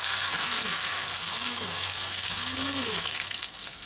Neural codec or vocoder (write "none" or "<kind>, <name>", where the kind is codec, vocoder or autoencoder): codec, SNAC